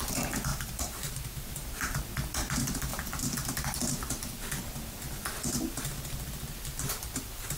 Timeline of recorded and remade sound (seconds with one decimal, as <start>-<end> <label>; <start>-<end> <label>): 0.0-0.5 recorded; 0.5-2.0 remade; 2.0-7.6 recorded